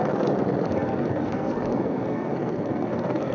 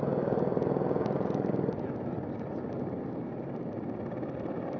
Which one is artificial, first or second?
first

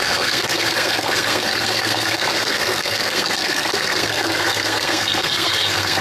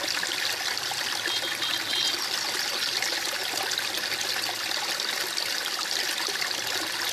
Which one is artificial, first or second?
first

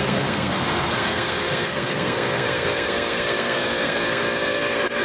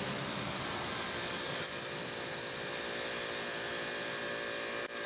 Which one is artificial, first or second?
first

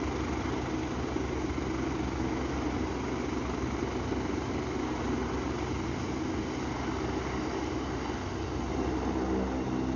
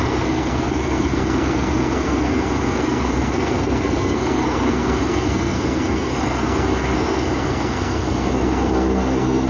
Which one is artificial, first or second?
second